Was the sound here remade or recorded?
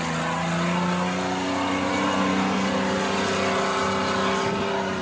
recorded